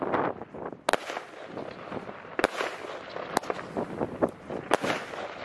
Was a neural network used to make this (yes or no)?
no